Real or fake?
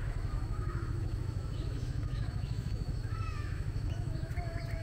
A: fake